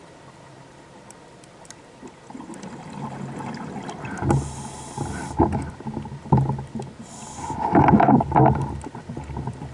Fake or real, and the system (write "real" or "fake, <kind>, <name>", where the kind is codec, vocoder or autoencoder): real